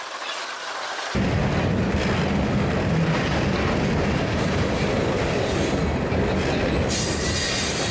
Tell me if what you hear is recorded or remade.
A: recorded